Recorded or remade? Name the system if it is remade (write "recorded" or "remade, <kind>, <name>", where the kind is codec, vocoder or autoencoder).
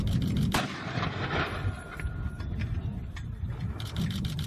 remade, vocoder, BigVGAN v2